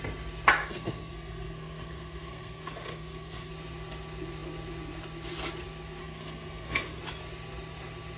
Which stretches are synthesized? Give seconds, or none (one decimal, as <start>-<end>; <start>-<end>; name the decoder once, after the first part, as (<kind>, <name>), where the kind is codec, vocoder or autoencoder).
0.6-3.5 (codec, SNAC); 6.0-7.0